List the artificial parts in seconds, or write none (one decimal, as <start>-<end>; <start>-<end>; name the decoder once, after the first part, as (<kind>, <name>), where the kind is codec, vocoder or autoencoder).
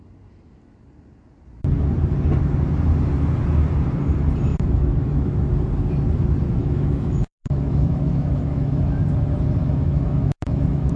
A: 4.5-5.4 (autoencoder, DAC-VAE); 6.6-9.0; 9.6-11.0